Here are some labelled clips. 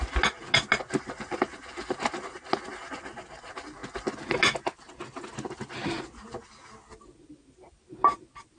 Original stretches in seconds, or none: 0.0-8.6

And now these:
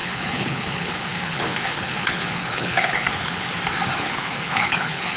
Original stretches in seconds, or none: 3.5-4.0

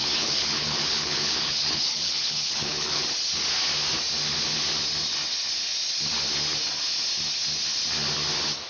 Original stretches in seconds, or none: 3.0-8.7